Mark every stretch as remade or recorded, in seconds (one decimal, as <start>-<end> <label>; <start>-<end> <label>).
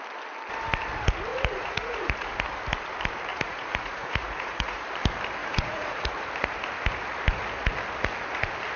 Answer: 0.0-1.3 recorded; 1.3-2.3 remade; 2.3-3.3 recorded; 3.3-4.8 remade; 4.8-5.4 recorded; 5.4-6.1 remade; 6.1-8.8 recorded